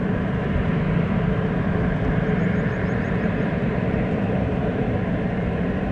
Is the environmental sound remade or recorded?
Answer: remade